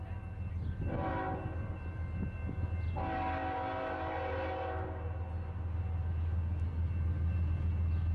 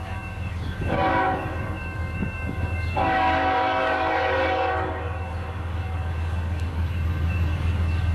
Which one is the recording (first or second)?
first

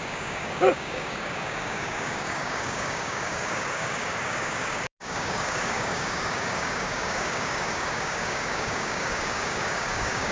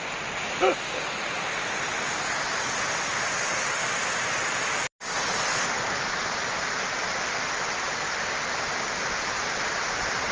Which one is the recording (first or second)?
second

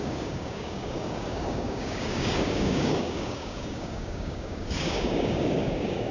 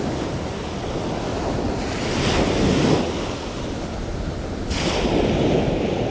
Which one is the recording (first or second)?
second